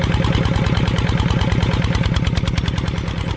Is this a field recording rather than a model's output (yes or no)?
yes